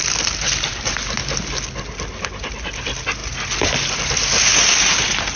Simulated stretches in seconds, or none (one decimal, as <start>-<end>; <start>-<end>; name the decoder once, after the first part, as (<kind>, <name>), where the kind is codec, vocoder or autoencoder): none